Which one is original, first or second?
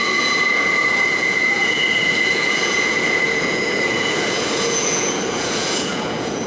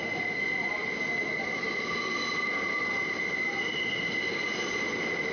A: second